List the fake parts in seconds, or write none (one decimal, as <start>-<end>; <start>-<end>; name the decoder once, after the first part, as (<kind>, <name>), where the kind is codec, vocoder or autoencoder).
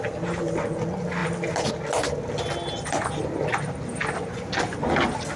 none